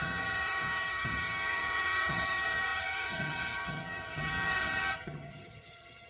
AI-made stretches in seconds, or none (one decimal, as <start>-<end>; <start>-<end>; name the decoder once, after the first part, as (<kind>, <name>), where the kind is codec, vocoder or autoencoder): 0.0-6.1 (vocoder, HiFi-GAN)